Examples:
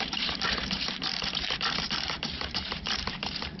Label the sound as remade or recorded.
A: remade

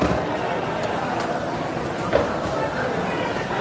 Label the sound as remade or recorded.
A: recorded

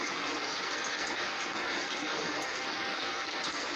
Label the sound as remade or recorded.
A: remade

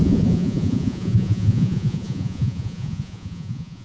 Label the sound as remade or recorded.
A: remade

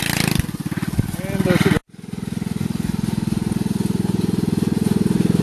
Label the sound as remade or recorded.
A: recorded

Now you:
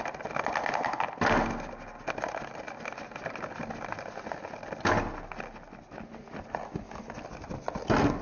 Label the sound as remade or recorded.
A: recorded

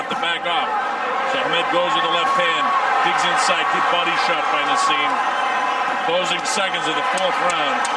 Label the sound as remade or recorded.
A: recorded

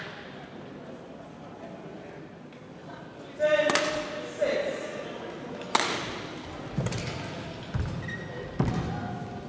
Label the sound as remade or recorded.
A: recorded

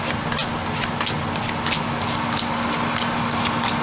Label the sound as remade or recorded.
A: recorded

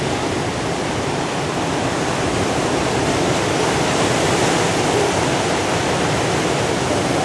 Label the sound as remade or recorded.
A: remade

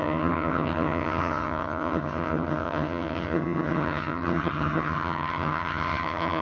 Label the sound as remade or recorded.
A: remade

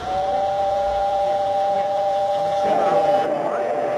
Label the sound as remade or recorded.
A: remade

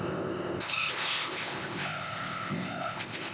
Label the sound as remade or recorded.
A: remade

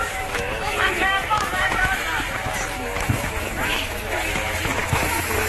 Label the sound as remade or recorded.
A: remade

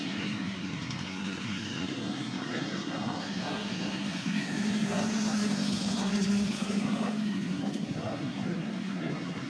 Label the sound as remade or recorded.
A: remade